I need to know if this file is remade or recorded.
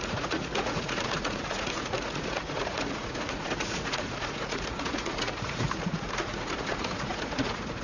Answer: remade